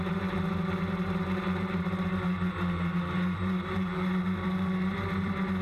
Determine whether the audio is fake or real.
fake